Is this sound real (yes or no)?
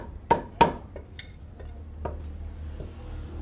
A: yes